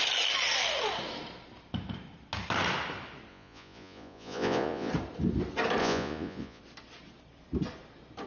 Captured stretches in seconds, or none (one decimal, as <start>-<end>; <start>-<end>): 0.0-3.3; 4.9-5.8; 6.6-8.3